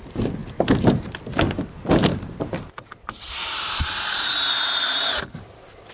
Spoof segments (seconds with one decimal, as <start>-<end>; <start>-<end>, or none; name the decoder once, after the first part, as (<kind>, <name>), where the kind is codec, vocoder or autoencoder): 0.4-1.2 (vocoder, BigVGAN v2); 2.1-5.9